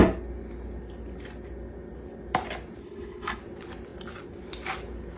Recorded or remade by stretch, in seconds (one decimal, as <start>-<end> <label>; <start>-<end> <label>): 0.0-2.8 recorded; 2.8-3.4 remade; 3.4-5.2 recorded